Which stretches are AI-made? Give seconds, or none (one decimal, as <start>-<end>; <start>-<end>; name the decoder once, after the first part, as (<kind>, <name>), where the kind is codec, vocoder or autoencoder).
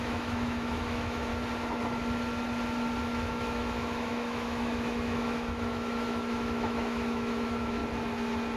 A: 0.0-1.3 (autoencoder, DAC-VAE); 3.0-7.8